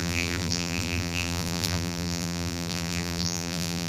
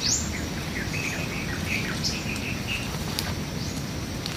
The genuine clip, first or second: second